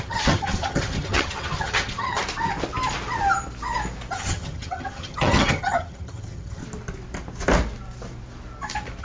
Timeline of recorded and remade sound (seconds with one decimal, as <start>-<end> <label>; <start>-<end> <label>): 0.0-2.2 remade; 2.2-4.1 recorded; 4.1-6.6 remade; 6.6-9.0 recorded